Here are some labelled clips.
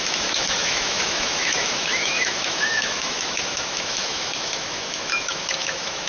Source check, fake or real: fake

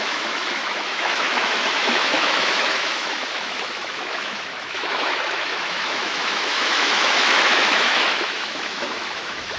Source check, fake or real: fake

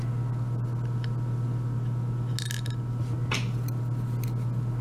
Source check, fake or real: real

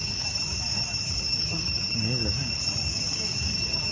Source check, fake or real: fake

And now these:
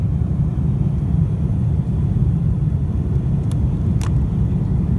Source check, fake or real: real